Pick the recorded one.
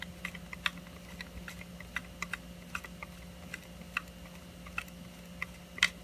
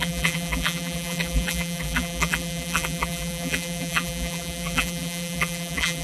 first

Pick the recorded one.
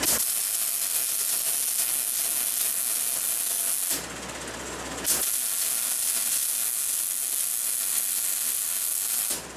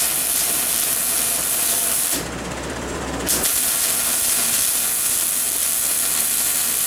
first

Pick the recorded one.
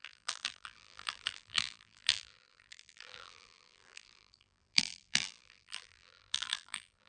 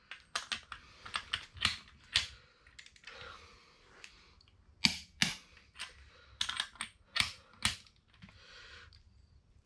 second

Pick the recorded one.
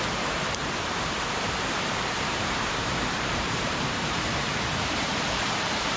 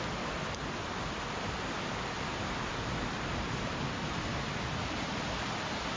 second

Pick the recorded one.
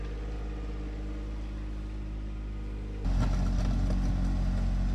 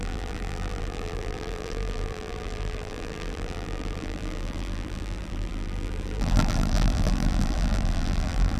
first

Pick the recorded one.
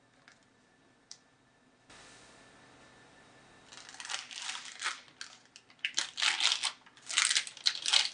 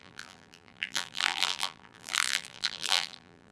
first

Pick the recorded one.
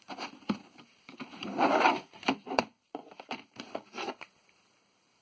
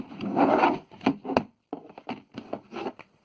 second